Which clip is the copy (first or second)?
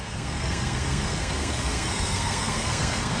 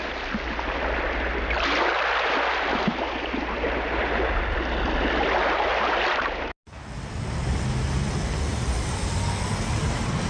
first